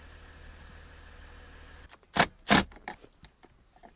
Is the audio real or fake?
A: real